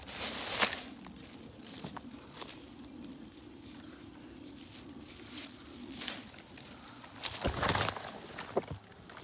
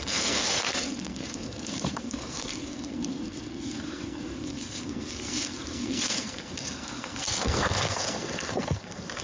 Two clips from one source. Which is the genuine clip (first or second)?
first